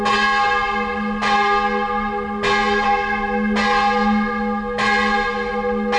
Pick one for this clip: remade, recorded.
recorded